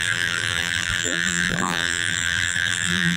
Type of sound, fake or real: fake